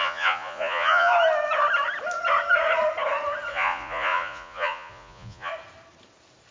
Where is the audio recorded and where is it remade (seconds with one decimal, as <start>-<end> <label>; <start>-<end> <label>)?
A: 0.0-1.1 remade; 1.1-3.5 recorded; 3.5-5.5 remade; 5.5-6.5 recorded